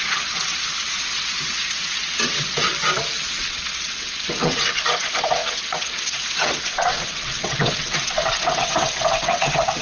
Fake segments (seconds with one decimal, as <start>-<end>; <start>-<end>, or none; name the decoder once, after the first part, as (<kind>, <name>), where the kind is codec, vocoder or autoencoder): 0.0-2.7 (vocoder, WaveNeXt); 3.5-9.8